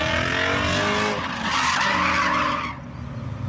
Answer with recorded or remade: recorded